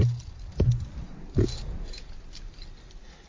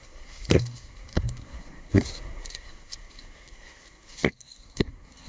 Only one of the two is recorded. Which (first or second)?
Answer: first